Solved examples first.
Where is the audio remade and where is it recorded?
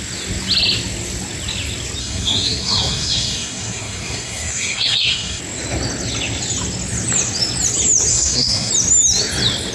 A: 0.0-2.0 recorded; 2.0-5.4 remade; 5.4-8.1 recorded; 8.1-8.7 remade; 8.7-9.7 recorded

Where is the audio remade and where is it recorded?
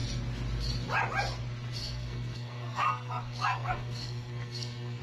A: 0.0-1.8 recorded; 1.8-5.0 remade